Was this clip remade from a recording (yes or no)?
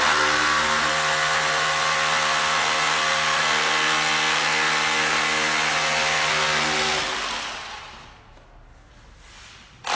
no